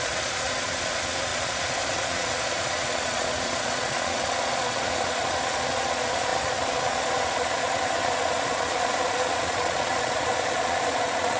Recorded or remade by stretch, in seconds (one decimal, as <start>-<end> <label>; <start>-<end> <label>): 0.0-11.4 remade